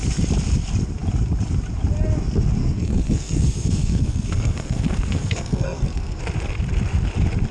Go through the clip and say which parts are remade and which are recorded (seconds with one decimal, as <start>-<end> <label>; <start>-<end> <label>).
0.0-2.6 recorded; 2.6-6.2 remade; 6.2-7.5 recorded